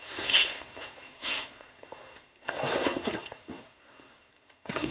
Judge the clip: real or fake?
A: fake